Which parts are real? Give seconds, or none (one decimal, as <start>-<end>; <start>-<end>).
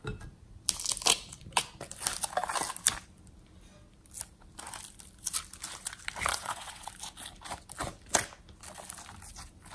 0.0-6.3; 6.9-9.7